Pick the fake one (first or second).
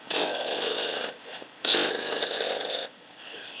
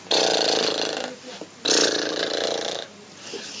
first